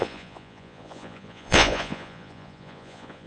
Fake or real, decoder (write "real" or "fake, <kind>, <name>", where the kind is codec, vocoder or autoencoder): fake, vocoder, Vocos